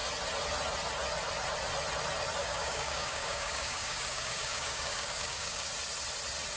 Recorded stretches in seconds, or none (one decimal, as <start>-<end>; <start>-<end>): 0.0-2.4; 5.7-6.6

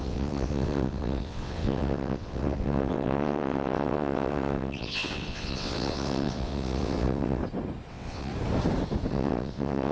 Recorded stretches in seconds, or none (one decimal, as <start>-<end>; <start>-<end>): 7.4-7.9; 8.3-9.1

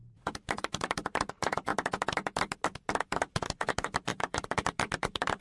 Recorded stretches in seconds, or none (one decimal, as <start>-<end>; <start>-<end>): 1.7-3.1

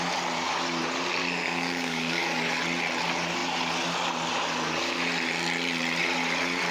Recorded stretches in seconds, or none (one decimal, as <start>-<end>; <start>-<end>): 0.0-1.2; 2.6-6.7

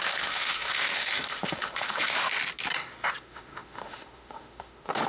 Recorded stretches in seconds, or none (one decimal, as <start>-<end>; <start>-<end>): 2.3-3.2

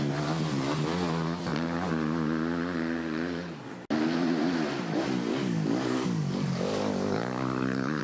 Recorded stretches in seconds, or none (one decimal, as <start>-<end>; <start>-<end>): 0.0-5.3

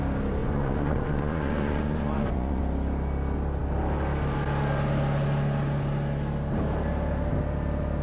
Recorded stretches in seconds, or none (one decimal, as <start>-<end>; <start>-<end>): 0.0-0.4; 2.6-8.0

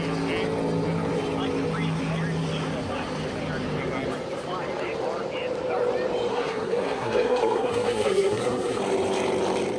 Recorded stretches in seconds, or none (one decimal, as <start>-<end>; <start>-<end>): 0.0-6.3; 8.8-9.8